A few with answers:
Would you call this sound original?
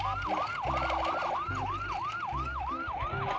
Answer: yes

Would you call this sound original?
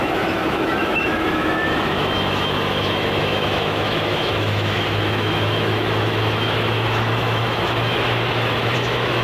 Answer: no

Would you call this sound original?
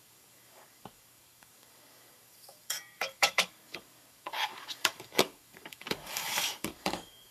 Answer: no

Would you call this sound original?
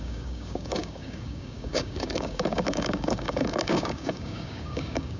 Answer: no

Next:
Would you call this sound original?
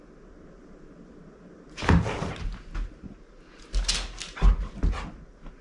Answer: yes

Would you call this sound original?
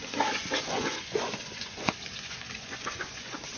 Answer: no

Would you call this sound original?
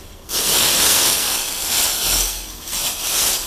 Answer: no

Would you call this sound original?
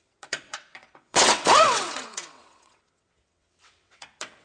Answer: no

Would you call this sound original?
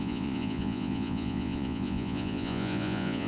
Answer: no